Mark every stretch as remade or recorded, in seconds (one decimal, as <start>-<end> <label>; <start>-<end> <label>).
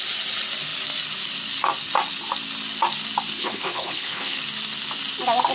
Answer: 0.0-3.4 recorded; 3.4-4.4 remade; 4.4-5.5 recorded